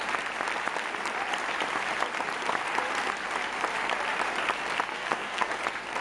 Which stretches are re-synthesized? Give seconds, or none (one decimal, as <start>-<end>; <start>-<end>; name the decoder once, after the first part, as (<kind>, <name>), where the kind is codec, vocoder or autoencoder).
4.9-5.6 (codec, SNAC)